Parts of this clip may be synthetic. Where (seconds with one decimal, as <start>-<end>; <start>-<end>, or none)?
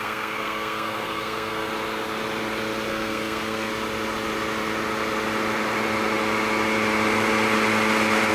0.0-1.7; 2.9-3.7